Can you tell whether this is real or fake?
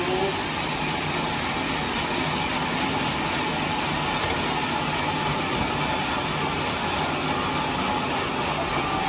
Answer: real